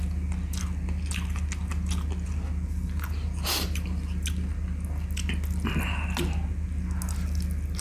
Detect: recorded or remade recorded